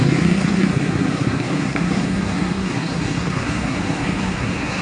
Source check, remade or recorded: remade